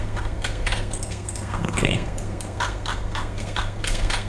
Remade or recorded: remade